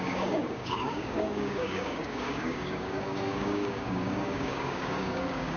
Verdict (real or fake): fake